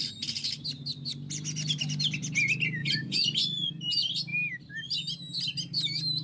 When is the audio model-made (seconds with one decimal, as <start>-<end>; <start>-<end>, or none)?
2.8-3.9